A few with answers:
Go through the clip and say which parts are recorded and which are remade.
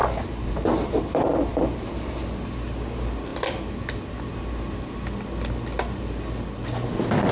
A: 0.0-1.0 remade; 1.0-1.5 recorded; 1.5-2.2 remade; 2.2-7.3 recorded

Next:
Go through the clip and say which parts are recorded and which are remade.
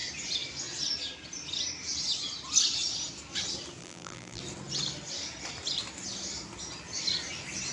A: 0.0-3.8 recorded; 3.8-4.4 remade; 4.4-7.7 recorded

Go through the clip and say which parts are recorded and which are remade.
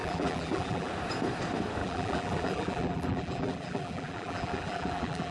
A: 0.0-0.9 remade; 0.9-1.8 recorded; 1.8-5.3 remade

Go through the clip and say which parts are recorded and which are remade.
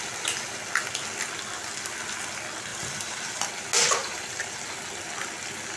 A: 0.0-2.7 recorded; 2.7-3.5 remade; 3.5-4.0 recorded; 4.0-4.6 remade; 4.6-5.8 recorded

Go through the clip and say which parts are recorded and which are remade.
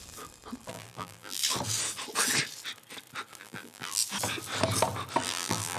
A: 0.0-0.7 recorded; 0.7-1.4 remade; 1.4-3.4 recorded; 3.4-4.0 remade; 4.0-5.2 recorded; 5.2-5.8 remade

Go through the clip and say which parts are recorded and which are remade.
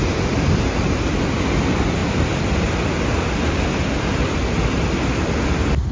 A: 0.0-2.0 recorded; 2.0-5.5 remade; 5.5-5.9 recorded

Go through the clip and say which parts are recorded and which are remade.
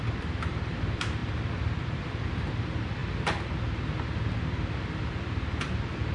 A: 0.0-3.0 remade; 3.0-4.8 recorded; 4.8-6.1 remade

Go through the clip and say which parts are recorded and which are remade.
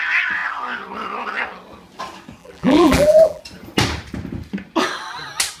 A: 0.0-2.4 recorded; 2.4-3.4 remade; 3.4-5.6 recorded